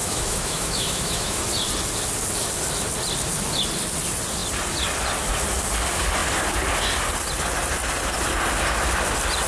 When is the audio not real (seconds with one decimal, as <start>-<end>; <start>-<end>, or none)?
0.0-1.4